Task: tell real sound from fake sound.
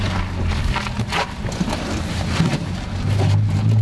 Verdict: real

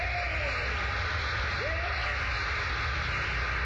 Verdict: real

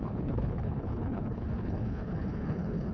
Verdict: fake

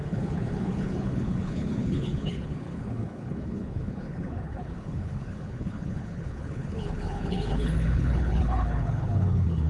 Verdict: fake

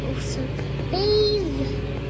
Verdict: real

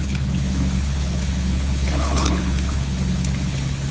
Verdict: fake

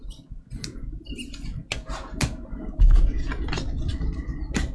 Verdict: real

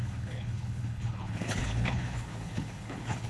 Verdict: fake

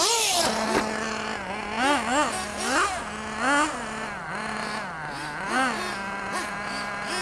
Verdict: real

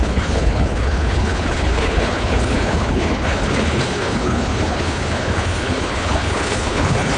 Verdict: fake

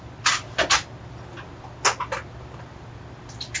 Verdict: real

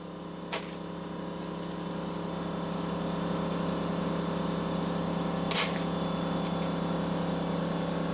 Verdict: real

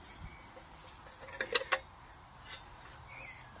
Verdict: real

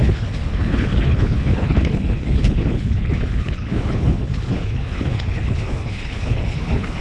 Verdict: fake